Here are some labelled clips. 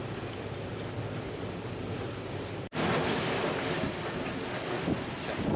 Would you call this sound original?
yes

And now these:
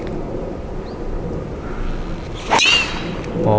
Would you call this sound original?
yes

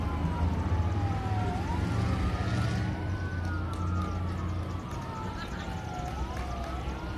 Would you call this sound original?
yes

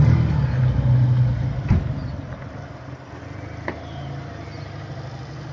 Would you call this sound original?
yes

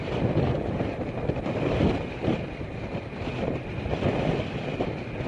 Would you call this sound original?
yes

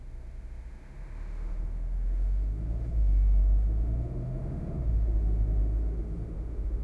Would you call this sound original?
no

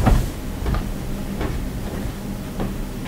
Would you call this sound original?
yes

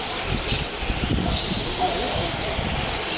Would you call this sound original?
yes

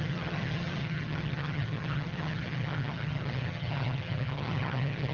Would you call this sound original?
no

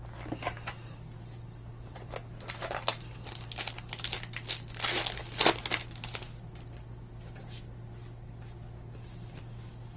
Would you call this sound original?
yes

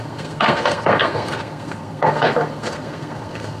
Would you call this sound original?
no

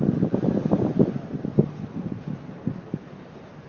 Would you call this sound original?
yes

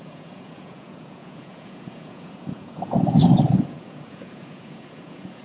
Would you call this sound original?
no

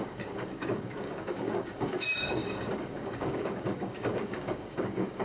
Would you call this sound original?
no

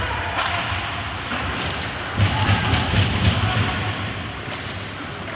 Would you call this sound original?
no